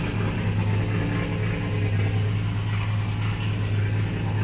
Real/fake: real